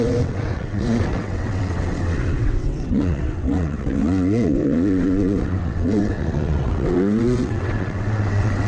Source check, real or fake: fake